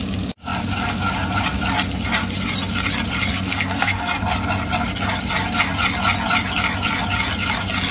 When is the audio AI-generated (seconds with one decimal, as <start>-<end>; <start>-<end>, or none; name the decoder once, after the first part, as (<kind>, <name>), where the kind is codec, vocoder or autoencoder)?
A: 3.3-4.2 (codec, SNAC)